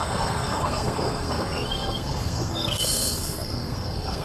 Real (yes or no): no